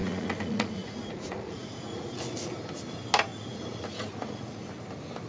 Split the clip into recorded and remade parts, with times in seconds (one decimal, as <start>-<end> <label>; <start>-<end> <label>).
0.0-2.1 remade; 2.1-3.3 recorded; 3.3-4.7 remade; 4.7-5.3 recorded